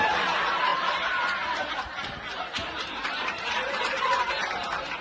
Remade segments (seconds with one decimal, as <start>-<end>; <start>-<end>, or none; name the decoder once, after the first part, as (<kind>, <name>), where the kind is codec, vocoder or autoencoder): 2.3-4.5 (vocoder, BigVGAN v2)